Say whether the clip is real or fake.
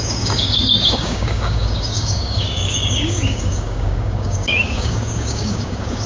fake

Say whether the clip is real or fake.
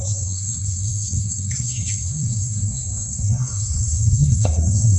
fake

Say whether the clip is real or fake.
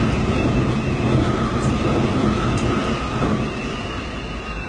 real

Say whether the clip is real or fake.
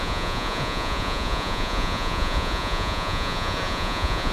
fake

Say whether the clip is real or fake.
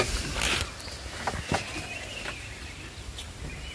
real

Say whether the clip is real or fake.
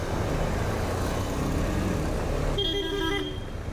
real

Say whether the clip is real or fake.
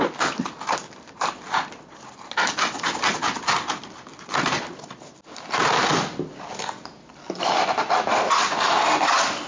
real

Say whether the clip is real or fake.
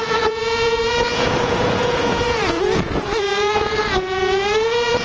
fake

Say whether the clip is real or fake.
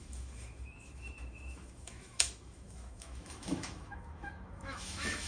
fake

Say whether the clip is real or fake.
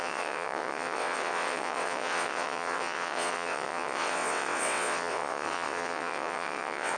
fake